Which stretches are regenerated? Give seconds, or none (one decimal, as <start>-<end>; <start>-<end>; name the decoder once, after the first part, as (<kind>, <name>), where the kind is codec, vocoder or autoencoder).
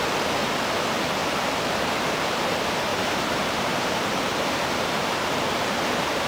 1.2-2.2 (vocoder, BigVGAN v2); 2.9-6.3